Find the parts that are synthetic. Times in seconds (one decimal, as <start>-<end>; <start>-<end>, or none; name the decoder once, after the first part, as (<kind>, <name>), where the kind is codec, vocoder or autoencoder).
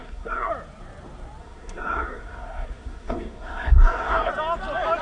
0.0-0.5 (codec, SNAC); 1.4-4.3